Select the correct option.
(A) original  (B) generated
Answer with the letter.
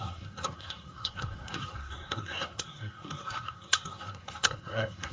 B